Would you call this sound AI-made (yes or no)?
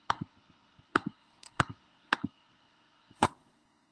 yes